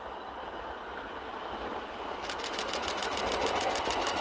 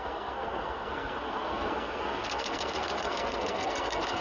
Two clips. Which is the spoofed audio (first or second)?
second